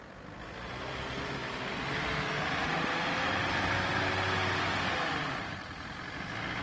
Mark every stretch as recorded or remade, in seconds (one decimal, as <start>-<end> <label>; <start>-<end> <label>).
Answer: 0.0-6.6 recorded